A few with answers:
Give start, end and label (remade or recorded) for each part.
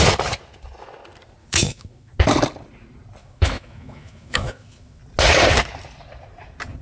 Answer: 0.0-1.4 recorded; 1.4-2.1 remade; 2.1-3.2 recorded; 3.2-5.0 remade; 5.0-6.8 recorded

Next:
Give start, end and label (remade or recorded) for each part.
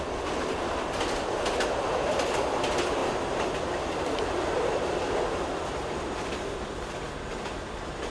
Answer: 0.0-8.1 recorded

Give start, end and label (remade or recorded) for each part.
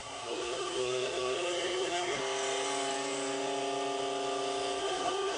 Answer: 0.0-2.2 remade; 2.2-4.8 recorded; 4.8-5.4 remade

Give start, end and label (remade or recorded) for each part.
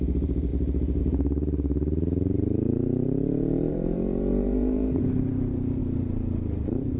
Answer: 0.0-0.5 remade; 0.5-1.0 recorded; 1.0-7.0 remade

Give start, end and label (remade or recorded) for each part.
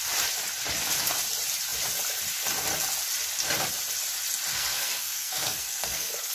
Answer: 0.0-4.5 recorded; 4.5-6.3 remade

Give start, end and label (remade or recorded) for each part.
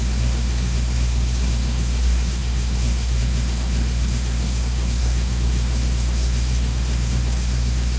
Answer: 0.0-8.0 remade